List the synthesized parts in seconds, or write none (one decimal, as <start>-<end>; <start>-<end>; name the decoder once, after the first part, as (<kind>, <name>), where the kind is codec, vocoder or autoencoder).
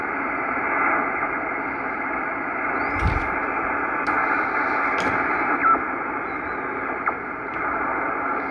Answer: 5.6-8.5 (vocoder, BigVGAN v2)